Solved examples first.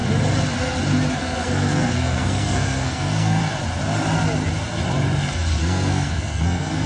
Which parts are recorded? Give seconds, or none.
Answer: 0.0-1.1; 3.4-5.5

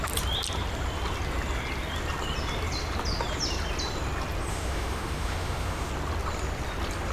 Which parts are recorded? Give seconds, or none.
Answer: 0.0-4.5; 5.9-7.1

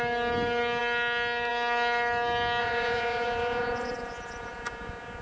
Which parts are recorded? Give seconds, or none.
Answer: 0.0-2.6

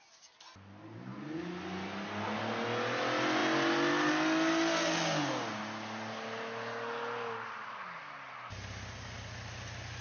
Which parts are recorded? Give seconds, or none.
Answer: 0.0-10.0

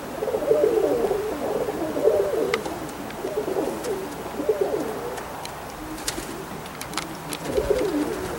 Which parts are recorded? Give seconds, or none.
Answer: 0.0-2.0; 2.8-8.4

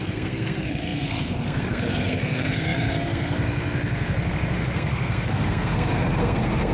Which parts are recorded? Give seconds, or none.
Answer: none

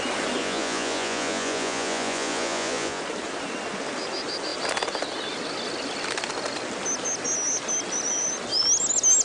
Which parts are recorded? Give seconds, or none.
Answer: 0.0-0.4; 3.0-9.2

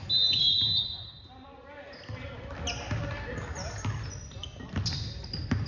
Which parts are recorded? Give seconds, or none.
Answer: 0.0-5.7